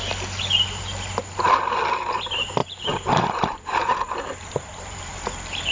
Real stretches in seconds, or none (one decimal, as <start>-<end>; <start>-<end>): 0.0-2.6